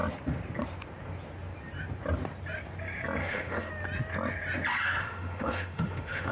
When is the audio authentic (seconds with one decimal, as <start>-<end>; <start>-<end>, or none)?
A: 0.0-3.2; 3.7-5.0